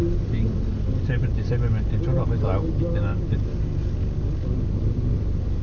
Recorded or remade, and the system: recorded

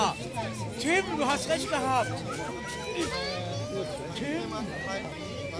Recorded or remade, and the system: recorded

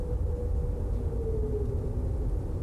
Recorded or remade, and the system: recorded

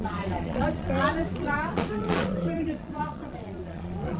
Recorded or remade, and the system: remade, vocoder, Vocos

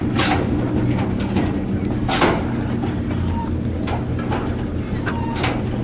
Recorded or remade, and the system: recorded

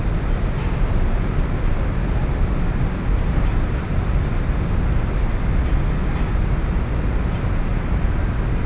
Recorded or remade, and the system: recorded